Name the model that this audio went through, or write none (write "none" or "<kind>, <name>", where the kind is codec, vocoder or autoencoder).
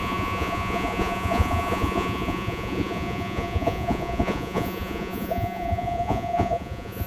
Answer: vocoder, Vocos